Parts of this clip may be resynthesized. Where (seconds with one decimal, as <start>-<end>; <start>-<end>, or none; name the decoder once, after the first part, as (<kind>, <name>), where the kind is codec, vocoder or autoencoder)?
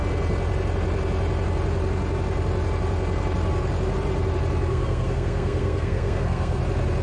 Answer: 4.7-6.6 (codec, SNAC)